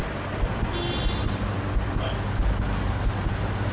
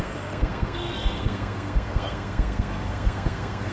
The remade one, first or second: second